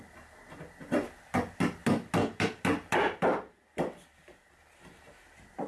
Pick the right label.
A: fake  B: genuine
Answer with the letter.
B